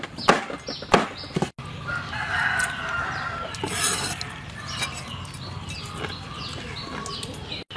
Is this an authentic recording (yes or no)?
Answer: yes